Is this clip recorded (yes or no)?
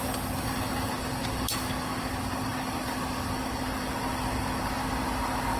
yes